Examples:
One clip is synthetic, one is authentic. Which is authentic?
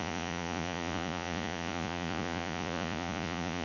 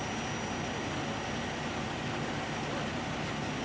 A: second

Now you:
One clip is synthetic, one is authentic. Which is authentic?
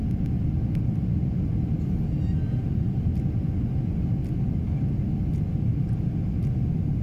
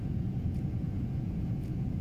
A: first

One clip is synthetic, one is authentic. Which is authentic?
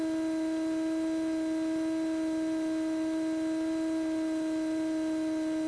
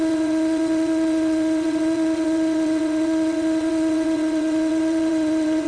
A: first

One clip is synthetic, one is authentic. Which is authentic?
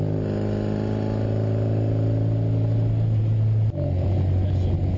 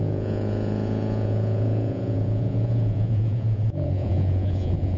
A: first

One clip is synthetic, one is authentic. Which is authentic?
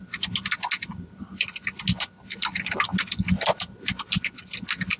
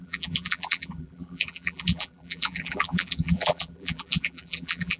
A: first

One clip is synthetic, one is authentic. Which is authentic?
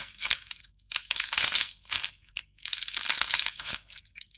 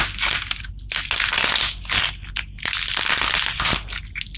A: second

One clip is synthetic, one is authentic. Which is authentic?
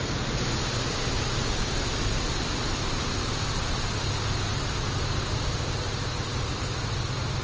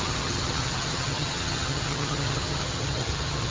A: first